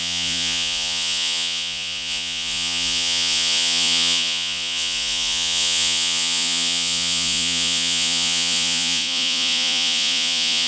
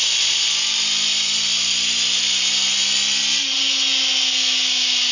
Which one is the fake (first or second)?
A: first